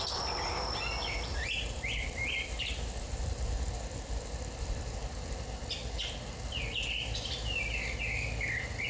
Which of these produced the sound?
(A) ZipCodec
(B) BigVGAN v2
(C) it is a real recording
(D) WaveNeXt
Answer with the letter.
C